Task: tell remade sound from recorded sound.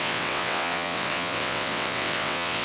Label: remade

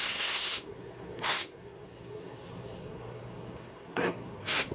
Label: remade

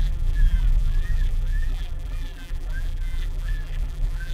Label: remade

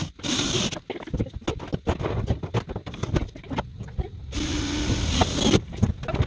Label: recorded